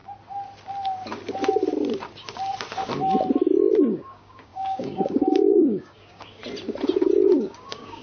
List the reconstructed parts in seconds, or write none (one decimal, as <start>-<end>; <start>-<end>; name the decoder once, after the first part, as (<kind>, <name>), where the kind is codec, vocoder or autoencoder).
3.8-6.4 (codec, DAC); 7.4-8.0